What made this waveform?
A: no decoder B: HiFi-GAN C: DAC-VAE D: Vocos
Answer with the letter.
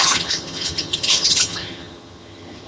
B